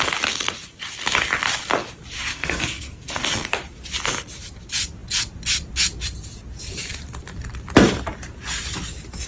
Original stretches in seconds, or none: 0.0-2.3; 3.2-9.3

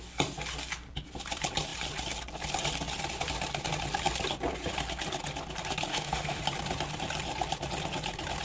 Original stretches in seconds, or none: 0.0-5.9; 6.4-8.4

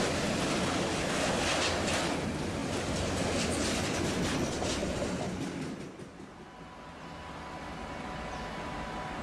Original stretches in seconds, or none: 0.0-9.2

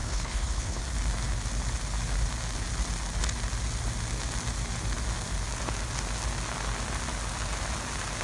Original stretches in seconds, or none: 0.8-8.2

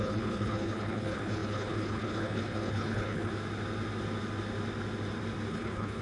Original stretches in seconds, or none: 3.3-5.5